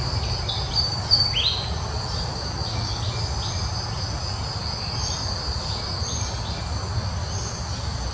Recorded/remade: recorded